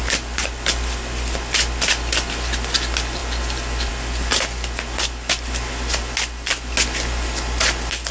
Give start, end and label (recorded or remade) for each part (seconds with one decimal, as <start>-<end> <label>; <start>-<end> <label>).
0.0-8.1 recorded